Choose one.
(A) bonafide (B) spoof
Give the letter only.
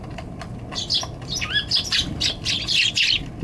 A